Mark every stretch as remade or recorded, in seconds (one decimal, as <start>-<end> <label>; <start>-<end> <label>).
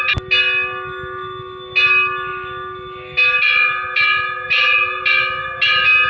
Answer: 0.0-6.1 recorded